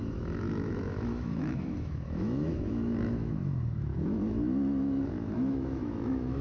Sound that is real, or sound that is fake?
fake